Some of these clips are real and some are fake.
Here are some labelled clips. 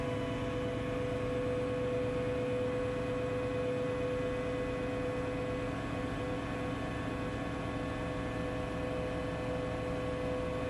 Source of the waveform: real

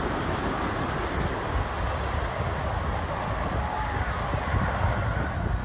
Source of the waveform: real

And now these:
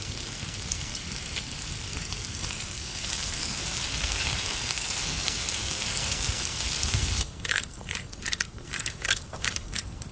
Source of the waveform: fake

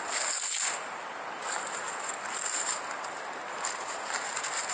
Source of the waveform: real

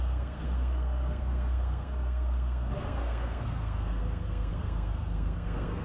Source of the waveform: fake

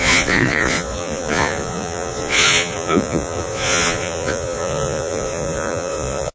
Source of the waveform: fake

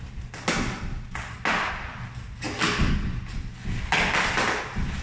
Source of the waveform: real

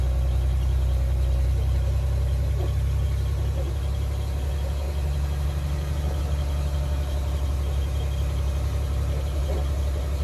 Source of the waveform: real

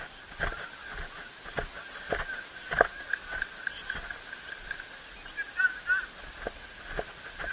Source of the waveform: real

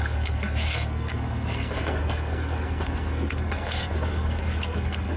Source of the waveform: fake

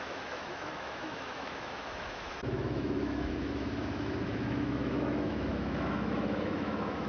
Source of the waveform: fake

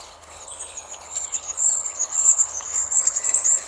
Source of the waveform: fake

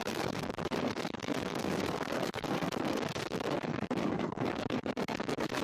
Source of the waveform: fake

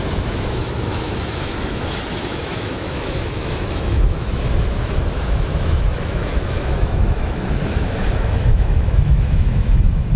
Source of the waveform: fake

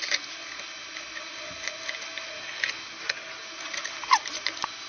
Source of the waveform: real